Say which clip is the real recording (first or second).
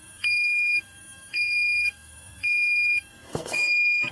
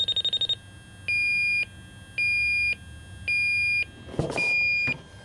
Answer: second